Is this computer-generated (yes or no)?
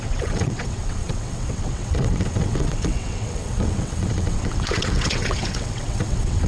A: yes